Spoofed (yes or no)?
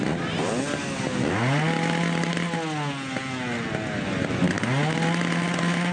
no